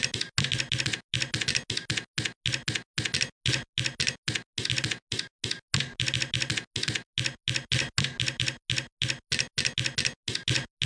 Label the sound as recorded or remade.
recorded